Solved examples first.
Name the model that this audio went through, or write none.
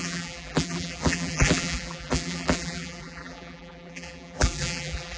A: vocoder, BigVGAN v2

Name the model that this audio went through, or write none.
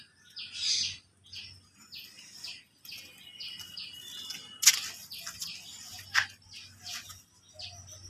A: none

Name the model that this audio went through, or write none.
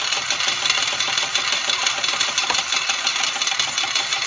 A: none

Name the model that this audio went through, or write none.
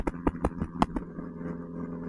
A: none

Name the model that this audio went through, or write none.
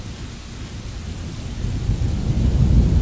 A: none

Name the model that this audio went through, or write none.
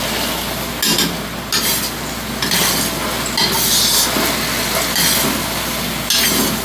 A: none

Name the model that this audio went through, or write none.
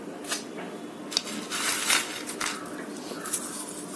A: none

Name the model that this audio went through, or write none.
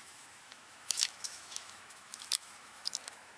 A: autoencoder, DAC-VAE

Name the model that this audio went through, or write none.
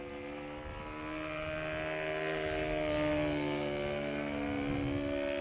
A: none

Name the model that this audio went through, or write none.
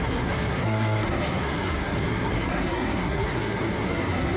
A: codec, SNAC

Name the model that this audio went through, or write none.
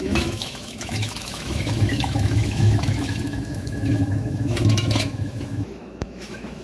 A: autoencoder, DAC-VAE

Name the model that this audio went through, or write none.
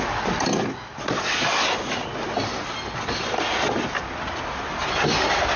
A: none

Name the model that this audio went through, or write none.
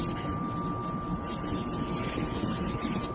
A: none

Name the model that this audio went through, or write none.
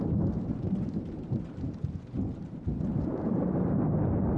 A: vocoder, BigVGAN v2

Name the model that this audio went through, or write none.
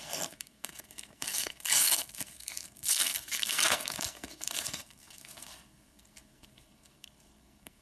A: codec, SNAC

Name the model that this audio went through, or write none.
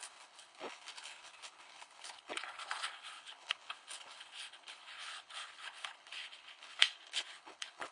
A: codec, HILCodec